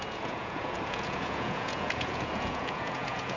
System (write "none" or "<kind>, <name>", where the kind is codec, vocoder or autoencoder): vocoder, Vocos